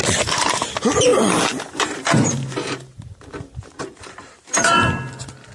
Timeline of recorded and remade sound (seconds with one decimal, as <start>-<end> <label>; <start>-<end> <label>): 0.0-1.1 recorded; 1.1-4.4 remade; 4.4-5.5 recorded